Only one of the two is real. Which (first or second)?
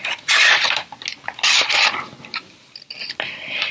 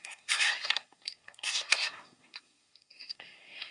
first